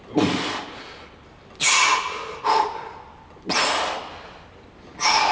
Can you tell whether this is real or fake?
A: real